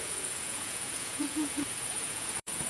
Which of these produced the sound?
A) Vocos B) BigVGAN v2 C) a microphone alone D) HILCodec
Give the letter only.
A